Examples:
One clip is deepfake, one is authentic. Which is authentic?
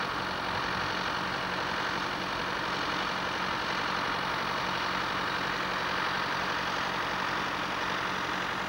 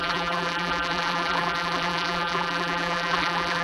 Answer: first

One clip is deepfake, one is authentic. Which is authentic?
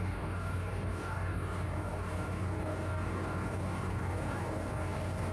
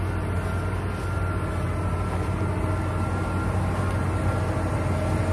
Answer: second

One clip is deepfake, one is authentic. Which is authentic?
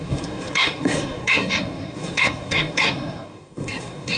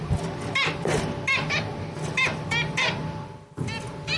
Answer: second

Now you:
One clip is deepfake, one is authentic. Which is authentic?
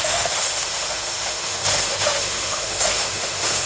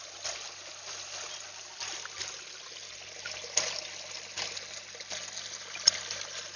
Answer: second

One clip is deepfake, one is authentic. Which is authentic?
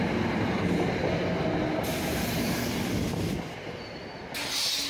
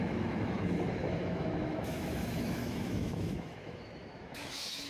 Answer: first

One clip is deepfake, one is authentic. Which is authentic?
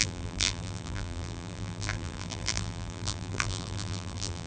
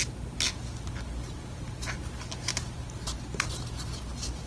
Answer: second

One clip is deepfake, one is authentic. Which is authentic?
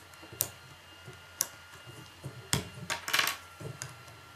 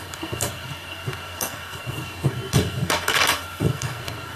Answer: first